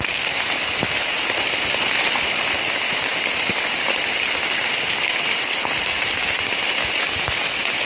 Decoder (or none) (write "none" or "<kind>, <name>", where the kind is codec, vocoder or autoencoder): none